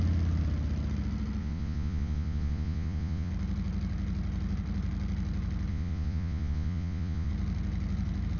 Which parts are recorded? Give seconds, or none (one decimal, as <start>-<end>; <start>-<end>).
0.0-1.4; 3.3-5.7; 7.3-8.4

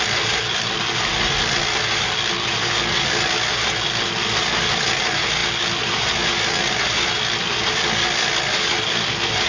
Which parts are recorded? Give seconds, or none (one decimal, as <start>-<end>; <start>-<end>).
0.0-9.5